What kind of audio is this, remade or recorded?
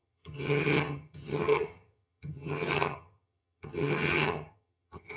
remade